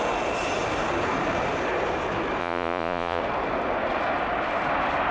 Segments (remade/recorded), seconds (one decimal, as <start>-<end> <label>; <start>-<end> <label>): 0.0-2.4 recorded; 2.4-3.2 remade; 3.2-5.1 recorded